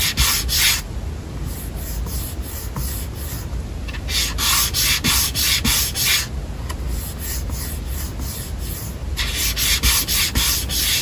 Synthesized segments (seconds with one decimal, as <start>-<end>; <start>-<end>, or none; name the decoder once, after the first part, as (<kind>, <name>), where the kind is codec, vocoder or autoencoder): none